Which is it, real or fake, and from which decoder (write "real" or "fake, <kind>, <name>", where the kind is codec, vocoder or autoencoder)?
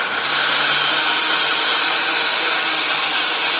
fake, vocoder, BigVGAN v2